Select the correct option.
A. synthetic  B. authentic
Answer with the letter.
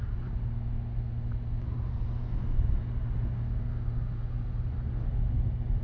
B